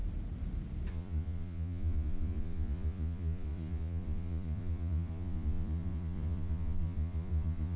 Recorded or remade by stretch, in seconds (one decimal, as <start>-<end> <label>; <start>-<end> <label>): 0.0-0.9 recorded; 0.9-7.8 remade